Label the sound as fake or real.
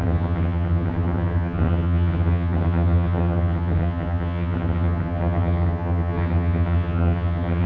fake